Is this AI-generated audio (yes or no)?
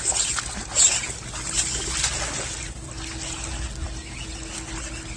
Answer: no